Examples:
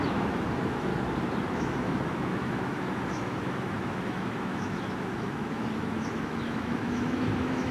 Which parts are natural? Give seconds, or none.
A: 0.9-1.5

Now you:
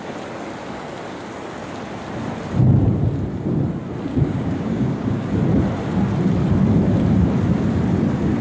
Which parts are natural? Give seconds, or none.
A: 0.0-4.1; 5.3-8.4

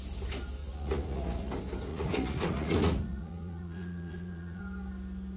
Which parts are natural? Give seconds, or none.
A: 0.0-0.6; 1.5-1.9; 4.6-5.4

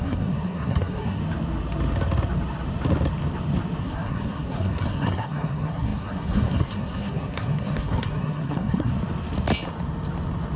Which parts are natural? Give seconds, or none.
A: 1.2-3.8; 8.9-10.6

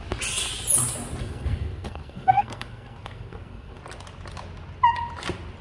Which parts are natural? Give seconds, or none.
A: 0.0-1.2; 3.8-5.6

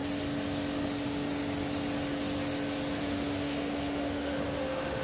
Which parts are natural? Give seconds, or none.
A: 0.0-3.0

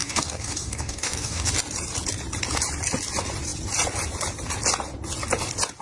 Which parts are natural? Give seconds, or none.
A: 1.5-5.8